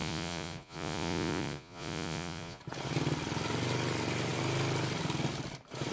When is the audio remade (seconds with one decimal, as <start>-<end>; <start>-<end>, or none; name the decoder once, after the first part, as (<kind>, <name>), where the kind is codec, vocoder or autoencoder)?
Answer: 0.0-2.6 (vocoder, Vocos)